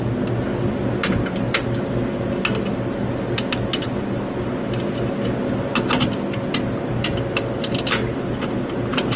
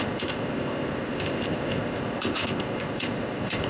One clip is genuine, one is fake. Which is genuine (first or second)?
first